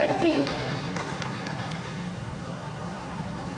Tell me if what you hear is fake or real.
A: fake